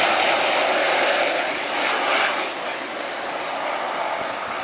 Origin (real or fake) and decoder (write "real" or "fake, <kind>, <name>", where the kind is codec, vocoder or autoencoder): real